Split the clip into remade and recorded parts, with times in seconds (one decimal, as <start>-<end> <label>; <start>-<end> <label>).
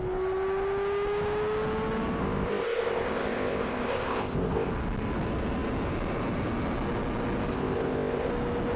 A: 0.0-2.2 recorded; 2.2-4.7 remade; 4.7-7.5 recorded; 7.5-8.3 remade; 8.3-8.8 recorded